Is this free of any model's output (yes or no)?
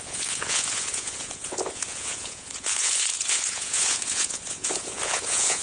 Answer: no